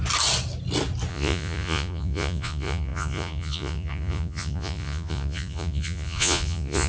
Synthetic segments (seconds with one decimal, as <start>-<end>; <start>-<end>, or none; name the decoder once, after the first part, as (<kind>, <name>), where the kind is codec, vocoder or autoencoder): 1.1-6.9 (vocoder, Vocos)